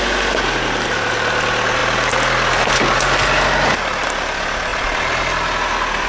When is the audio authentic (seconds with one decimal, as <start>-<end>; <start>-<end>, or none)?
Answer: 0.0-6.1